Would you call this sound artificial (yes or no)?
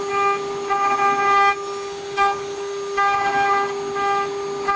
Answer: no